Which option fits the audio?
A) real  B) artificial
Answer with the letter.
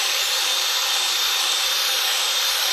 B